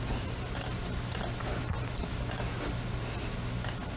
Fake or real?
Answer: real